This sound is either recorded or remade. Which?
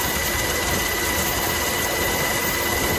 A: recorded